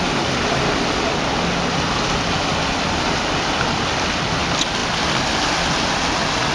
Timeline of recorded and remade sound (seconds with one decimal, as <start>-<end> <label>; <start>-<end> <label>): 0.0-4.8 recorded; 4.8-5.4 remade; 5.4-6.5 recorded